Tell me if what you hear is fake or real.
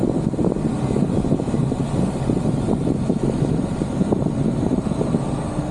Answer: real